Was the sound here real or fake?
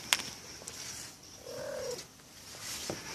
real